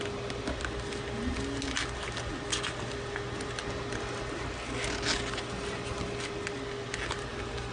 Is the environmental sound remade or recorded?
recorded